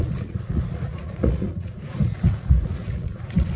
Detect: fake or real fake